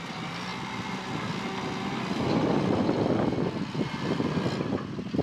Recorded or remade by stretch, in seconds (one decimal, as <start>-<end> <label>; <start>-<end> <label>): 0.0-5.2 recorded

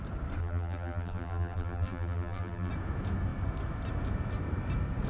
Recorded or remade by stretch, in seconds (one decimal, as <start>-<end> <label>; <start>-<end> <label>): 0.0-0.4 recorded; 0.4-2.7 remade; 2.7-5.1 recorded

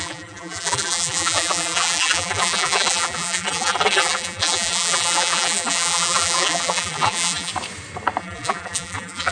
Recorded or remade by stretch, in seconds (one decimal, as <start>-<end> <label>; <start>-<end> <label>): 0.0-7.5 remade; 7.5-8.2 recorded; 8.2-9.3 remade

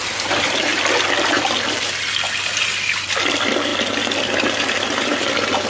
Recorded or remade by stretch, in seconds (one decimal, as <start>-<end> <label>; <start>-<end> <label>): 0.0-5.7 remade

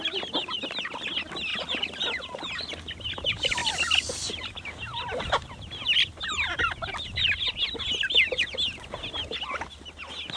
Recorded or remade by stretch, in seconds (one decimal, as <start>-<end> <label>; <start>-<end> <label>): 0.0-1.5 recorded; 1.5-2.2 remade; 2.2-3.6 recorded; 3.6-6.6 remade; 6.6-10.4 recorded

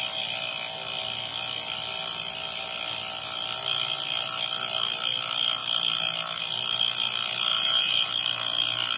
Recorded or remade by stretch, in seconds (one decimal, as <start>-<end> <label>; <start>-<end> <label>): 0.0-7.5 recorded; 7.5-8.1 remade; 8.1-9.0 recorded

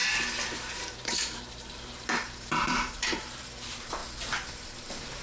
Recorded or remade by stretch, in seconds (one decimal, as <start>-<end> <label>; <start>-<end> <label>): 0.0-4.0 remade; 4.0-4.5 recorded; 4.5-5.2 remade

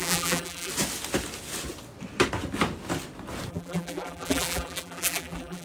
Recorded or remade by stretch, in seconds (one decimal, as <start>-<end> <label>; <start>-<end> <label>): 0.0-0.7 remade; 0.7-3.5 recorded; 3.5-5.6 remade